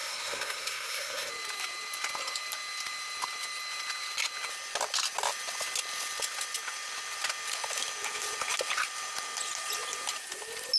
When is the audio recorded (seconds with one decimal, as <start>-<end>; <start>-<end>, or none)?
1.3-10.8